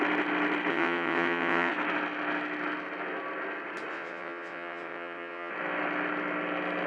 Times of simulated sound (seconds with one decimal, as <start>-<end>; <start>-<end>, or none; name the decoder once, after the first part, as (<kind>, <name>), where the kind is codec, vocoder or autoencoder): 0.7-1.7 (vocoder, WaveNeXt); 3.9-5.5